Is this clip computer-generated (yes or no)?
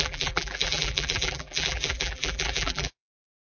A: yes